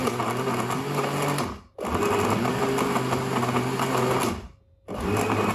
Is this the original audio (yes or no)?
yes